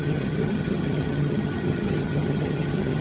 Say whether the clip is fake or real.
fake